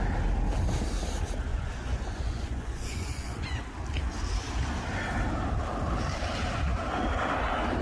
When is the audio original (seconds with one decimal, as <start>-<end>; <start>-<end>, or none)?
0.0-1.5; 3.6-7.8